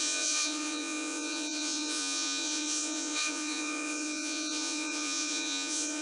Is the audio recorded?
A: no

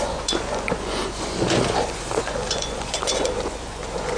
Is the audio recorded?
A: no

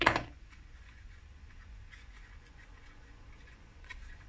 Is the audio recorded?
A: no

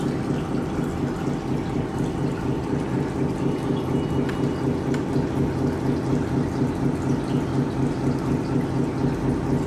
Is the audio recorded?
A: yes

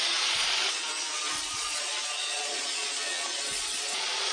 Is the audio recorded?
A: no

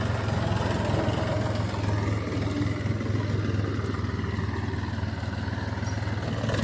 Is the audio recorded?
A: yes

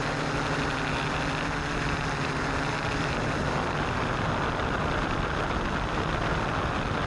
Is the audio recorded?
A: yes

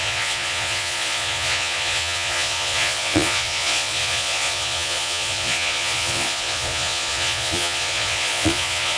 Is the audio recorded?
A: no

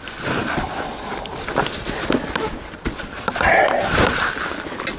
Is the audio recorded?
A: yes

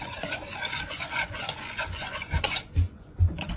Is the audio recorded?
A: no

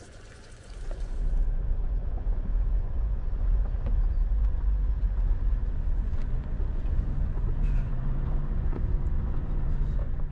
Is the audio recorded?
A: no